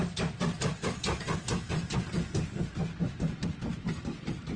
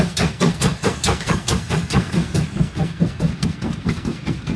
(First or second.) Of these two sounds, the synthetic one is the second